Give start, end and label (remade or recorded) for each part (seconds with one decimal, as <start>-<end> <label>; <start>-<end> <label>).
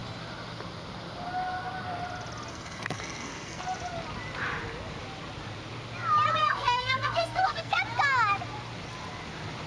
0.0-2.5 recorded; 2.5-3.6 remade; 3.6-6.4 recorded; 6.4-7.8 remade; 7.8-9.7 recorded